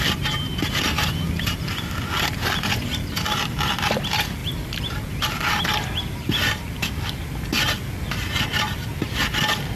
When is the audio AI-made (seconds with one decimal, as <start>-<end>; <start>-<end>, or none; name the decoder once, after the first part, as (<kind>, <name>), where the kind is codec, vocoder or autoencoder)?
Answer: none